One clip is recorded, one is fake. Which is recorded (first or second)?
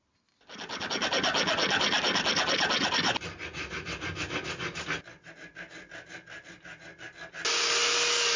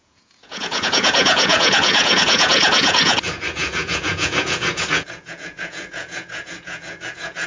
first